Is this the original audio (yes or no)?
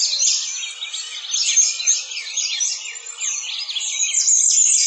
yes